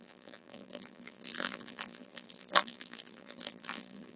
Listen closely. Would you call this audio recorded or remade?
remade